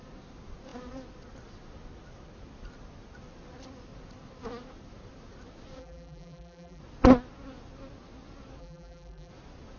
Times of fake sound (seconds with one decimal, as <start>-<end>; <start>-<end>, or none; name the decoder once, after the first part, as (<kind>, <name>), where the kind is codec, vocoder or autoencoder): 5.8-6.8 (vocoder, BigVGAN v2); 8.6-9.3